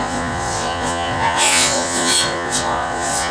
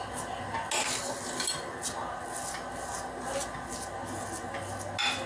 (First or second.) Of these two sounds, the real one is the second